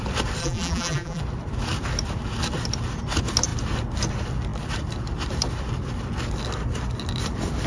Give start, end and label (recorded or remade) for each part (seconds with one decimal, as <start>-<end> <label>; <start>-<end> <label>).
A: 0.0-0.4 recorded; 0.4-1.2 remade; 1.2-7.7 recorded